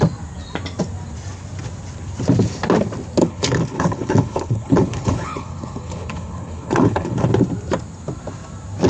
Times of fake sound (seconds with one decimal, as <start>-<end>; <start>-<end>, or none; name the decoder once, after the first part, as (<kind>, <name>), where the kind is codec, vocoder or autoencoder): 3.2-7.3 (codec, HILCodec)